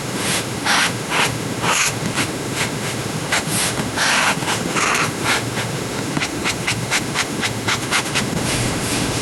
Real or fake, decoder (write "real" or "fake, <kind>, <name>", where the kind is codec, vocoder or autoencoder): fake, autoencoder, DAC-VAE